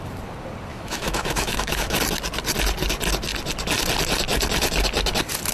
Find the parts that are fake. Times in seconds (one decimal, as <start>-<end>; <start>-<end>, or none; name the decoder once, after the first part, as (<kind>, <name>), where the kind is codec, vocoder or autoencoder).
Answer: 0.7-2.0 (autoencoder, DAC-VAE)